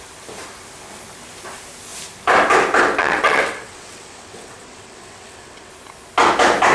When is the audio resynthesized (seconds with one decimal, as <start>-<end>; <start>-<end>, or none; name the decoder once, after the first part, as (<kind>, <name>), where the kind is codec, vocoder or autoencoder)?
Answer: 3.0-5.7 (vocoder, WaveNeXt)